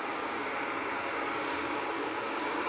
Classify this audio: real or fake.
fake